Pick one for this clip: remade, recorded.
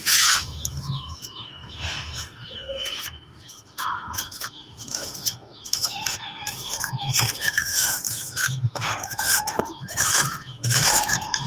remade